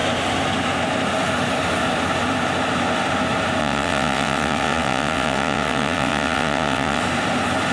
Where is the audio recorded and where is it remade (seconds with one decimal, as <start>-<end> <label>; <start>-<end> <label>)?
0.0-3.6 recorded; 3.6-7.0 remade; 7.0-7.7 recorded